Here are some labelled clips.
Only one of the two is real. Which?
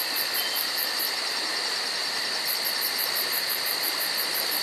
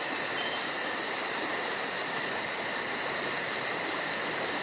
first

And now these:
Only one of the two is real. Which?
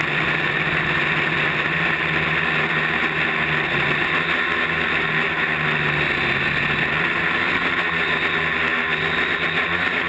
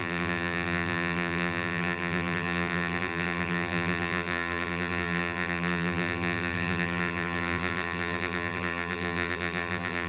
first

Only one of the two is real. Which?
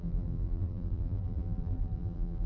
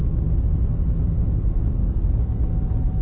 second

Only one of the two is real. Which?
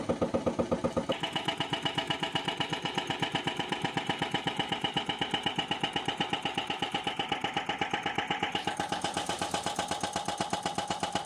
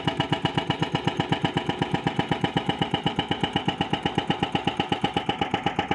second